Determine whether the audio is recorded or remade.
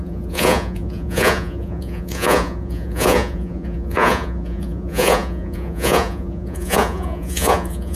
remade